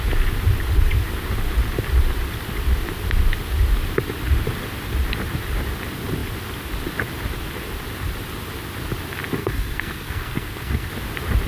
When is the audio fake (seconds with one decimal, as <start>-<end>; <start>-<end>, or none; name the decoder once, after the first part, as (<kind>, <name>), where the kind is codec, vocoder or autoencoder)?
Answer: 9.4-10.9 (codec, SNAC)